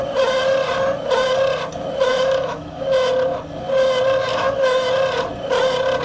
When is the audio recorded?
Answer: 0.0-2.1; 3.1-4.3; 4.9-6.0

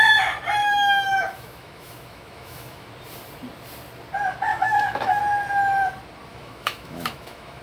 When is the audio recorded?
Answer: 0.0-0.6; 2.9-4.5; 5.2-6.3

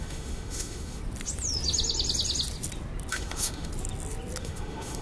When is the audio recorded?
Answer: 1.0-3.1; 3.7-4.4